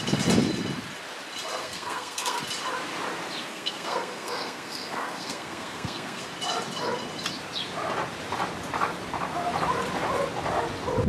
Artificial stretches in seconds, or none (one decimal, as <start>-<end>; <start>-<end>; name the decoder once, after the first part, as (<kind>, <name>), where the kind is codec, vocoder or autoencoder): 1.6-2.4 (codec, SNAC); 3.4-6.3